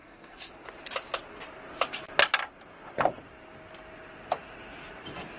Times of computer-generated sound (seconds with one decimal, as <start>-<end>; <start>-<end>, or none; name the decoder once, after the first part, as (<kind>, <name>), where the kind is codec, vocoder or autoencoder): 0.0-0.5 (codec, SNAC)